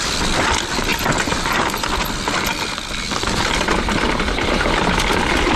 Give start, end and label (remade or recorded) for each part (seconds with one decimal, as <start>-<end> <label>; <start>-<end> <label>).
0.0-5.6 recorded